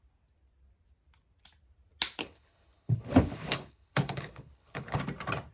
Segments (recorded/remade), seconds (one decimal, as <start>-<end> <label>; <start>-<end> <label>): 0.0-2.2 recorded; 2.2-5.0 remade; 5.0-5.5 recorded